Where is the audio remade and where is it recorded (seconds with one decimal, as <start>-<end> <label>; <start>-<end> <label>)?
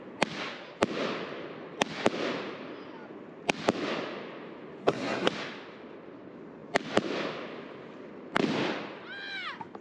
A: 0.0-4.8 recorded; 4.8-5.3 remade; 5.3-9.8 recorded